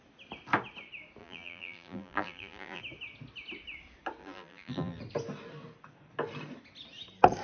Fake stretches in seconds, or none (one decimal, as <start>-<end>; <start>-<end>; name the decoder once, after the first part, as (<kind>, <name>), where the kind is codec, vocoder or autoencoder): 1.2-2.8 (vocoder, BigVGAN v2); 4.2-5.0